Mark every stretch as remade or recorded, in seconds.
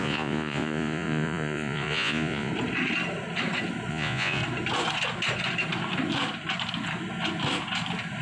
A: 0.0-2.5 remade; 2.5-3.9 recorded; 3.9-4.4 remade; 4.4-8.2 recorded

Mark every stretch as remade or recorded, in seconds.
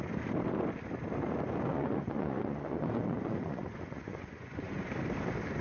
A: 0.0-1.7 recorded; 1.7-4.8 remade; 4.8-5.6 recorded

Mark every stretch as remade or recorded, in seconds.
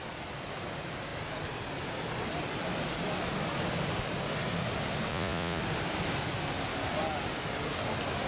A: 0.0-5.1 recorded; 5.1-5.6 remade; 5.6-8.3 recorded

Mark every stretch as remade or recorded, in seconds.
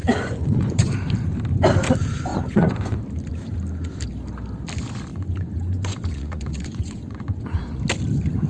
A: 0.0-0.9 remade; 0.9-2.3 recorded; 2.3-3.0 remade; 3.0-5.1 recorded; 5.1-7.8 remade; 7.8-8.5 recorded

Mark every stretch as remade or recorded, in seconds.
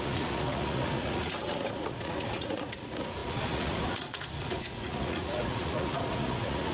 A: 0.0-6.7 remade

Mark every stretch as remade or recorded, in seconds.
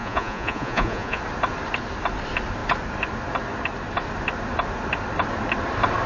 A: 0.0-1.2 remade; 1.2-6.1 recorded